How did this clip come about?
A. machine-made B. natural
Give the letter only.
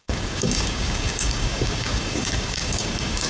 A